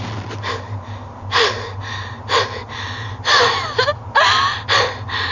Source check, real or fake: real